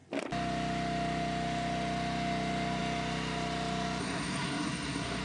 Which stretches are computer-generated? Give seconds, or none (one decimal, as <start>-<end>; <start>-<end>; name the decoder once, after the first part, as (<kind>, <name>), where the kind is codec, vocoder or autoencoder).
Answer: 4.0-5.2 (codec, SNAC)